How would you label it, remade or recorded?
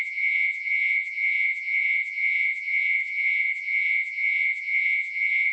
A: remade